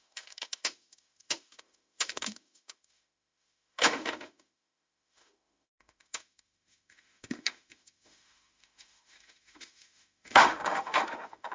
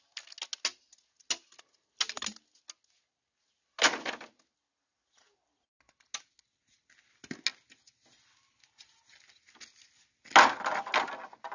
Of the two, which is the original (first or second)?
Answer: second